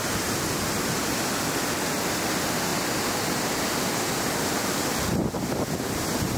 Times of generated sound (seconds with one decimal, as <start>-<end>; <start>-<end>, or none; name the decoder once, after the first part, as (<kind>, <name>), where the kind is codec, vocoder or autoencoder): 2.7-5.1 (vocoder, BigVGAN v2)